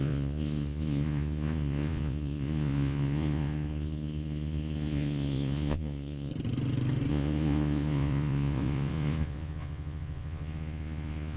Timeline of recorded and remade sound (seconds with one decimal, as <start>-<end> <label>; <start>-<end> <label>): 0.0-6.3 remade; 6.3-7.1 recorded; 7.1-11.4 remade